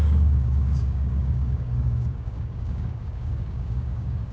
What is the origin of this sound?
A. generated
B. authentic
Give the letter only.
A